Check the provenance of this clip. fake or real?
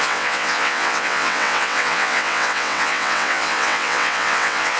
fake